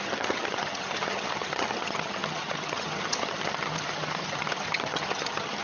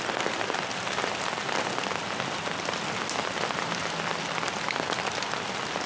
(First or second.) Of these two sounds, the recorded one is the second